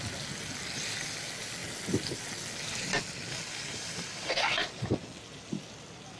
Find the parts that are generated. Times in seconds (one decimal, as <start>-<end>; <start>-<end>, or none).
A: 3.3-4.3